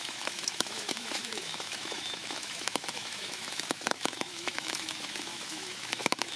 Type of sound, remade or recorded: remade